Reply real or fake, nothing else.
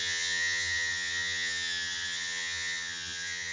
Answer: fake